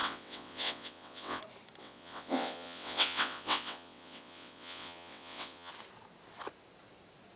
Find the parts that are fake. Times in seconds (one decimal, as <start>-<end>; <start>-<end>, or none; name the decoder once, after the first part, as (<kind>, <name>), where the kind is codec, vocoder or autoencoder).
0.0-1.4 (vocoder, WaveNeXt); 1.8-5.7